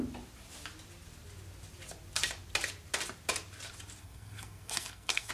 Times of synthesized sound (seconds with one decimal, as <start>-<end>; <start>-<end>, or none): 4.0-5.3